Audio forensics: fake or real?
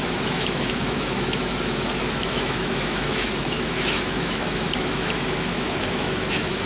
fake